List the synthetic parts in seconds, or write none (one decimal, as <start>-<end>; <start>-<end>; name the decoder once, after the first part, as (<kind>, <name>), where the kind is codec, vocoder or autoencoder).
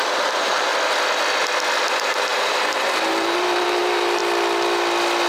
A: 0.0-0.7 (vocoder, BigVGAN v2); 1.9-4.2